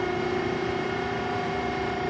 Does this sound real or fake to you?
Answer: fake